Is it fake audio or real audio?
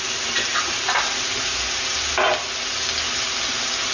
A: real